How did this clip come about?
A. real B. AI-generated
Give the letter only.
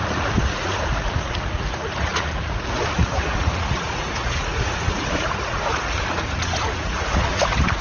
B